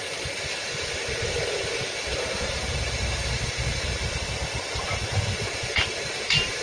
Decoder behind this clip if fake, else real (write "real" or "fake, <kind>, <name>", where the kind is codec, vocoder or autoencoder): fake, vocoder, BigVGAN v2